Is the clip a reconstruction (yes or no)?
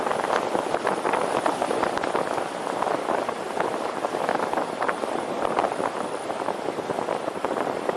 no